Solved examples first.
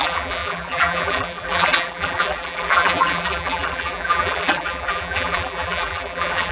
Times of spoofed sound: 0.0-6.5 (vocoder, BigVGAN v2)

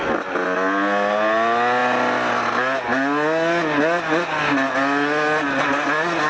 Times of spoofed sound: none

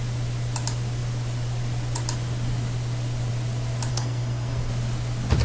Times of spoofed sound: 3.9-4.7 (codec, SNAC)

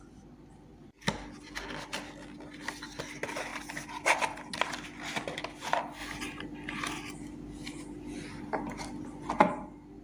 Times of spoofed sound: none

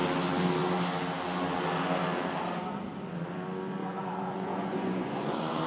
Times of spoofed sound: 3.8-5.7 (vocoder, Vocos)

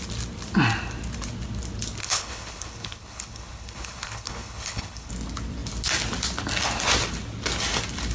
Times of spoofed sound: 2.0-5.1 (codec, HILCodec)

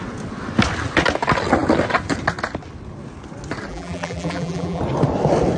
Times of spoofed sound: 3.7-4.8 (vocoder, BigVGAN v2)

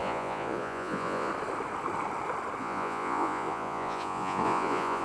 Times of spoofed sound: 0.0-1.3 (vocoder, Vocos); 2.6-5.0